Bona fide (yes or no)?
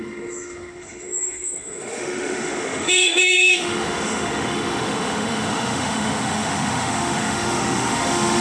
no